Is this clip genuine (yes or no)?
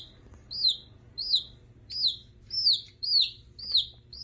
yes